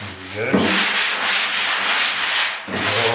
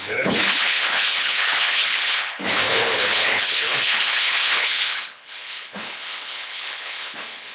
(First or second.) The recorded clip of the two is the first